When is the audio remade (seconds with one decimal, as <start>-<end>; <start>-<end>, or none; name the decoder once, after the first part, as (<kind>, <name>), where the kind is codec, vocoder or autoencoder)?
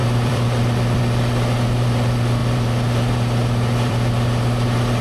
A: 0.0-5.0 (vocoder, BigVGAN v2)